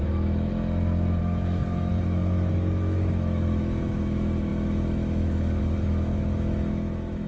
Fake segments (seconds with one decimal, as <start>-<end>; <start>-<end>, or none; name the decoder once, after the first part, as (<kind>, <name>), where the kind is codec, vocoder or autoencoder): 0.0-0.5 (autoencoder, DAC-VAE); 1.2-7.3